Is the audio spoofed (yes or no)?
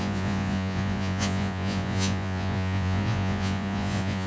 yes